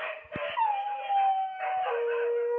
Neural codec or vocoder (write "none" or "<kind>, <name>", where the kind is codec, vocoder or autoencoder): none